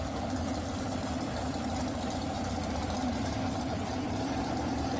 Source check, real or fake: fake